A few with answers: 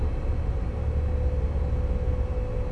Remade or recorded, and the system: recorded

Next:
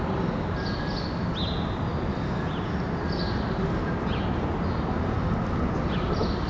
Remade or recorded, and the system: recorded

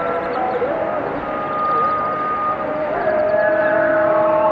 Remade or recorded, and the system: recorded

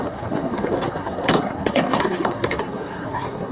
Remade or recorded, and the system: remade, codec, SNAC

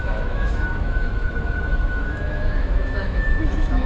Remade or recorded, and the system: remade, autoencoder, DAC-VAE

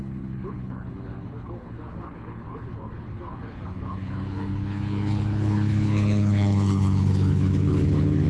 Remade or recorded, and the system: remade, codec, HILCodec